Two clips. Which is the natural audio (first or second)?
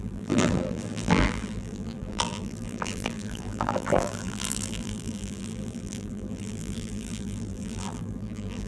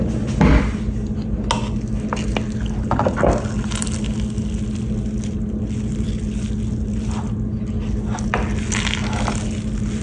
second